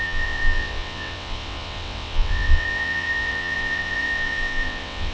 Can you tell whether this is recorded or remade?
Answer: remade